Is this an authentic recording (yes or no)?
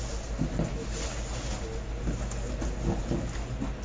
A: yes